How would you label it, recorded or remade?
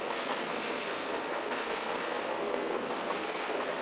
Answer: remade